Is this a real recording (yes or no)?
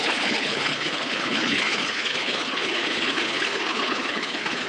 no